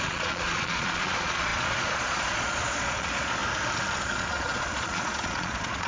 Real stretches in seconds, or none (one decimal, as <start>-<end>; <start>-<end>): 3.4-4.0